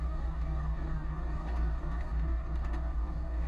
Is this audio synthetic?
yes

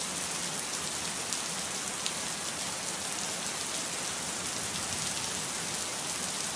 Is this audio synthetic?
no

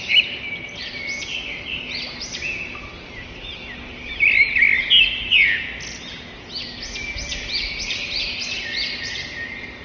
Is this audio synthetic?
no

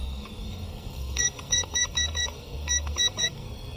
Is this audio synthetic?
yes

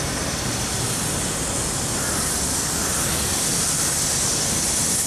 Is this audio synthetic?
no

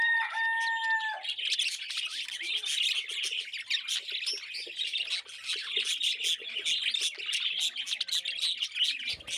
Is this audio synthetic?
no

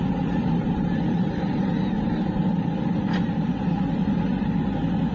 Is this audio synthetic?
yes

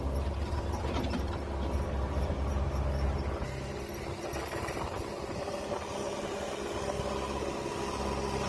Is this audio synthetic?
no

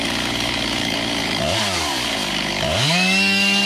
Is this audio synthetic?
yes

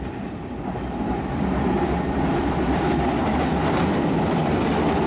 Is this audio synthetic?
yes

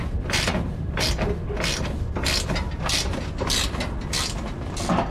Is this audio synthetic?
no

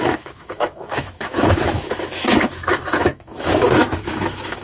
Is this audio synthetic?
yes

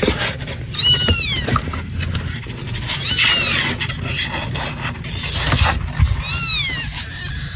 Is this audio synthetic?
no